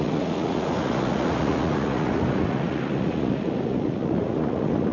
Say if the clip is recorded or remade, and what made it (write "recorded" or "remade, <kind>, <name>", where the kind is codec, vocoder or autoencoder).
remade, vocoder, Vocos